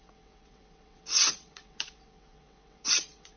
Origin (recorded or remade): remade